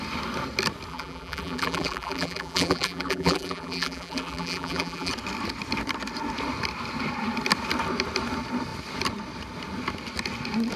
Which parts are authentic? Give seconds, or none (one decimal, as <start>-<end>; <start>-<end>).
0.0-0.9; 5.1-10.8